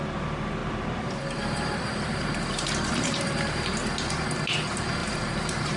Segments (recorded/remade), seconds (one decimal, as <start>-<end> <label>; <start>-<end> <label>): 0.0-0.6 recorded; 0.6-4.1 remade; 4.1-5.0 recorded; 5.0-5.8 remade

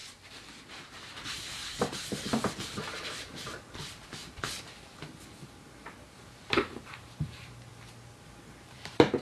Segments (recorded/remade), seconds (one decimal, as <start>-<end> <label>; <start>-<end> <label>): 0.0-0.7 recorded; 0.7-4.2 remade; 4.2-5.9 recorded; 5.9-7.7 remade; 7.7-8.4 recorded; 8.4-9.2 remade

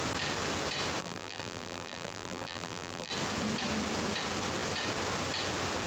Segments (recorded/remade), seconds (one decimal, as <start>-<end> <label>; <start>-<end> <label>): 0.0-1.0 recorded; 1.0-3.1 remade; 3.1-5.9 recorded

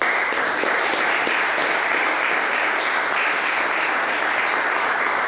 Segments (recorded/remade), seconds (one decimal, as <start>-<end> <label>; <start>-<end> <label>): 0.0-1.6 remade; 1.6-4.8 recorded; 4.8-5.3 remade

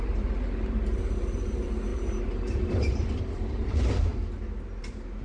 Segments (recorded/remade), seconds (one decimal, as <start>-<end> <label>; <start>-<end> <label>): 0.0-4.1 remade; 4.1-4.8 recorded; 4.8-5.2 remade

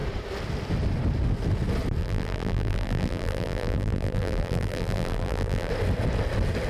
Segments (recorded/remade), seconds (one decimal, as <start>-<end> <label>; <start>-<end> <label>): 0.0-2.0 recorded; 2.0-5.7 remade; 5.7-6.7 recorded

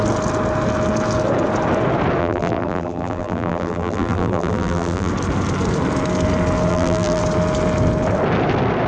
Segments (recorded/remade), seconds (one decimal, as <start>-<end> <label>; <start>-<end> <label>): 0.0-2.2 recorded; 2.2-5.1 remade; 5.1-6.7 recorded; 6.7-7.2 remade; 7.2-8.9 recorded

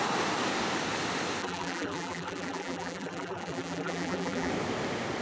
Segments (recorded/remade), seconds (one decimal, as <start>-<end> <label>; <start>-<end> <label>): 0.0-1.4 recorded; 1.4-4.5 remade; 4.5-5.2 recorded